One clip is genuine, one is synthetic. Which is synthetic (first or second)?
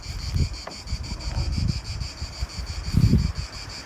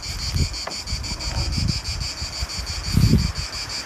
first